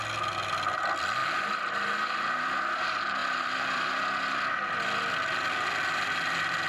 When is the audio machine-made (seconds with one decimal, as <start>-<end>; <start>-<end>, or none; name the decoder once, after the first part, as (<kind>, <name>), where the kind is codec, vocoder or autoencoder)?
3.2-3.9 (vocoder, BigVGAN v2)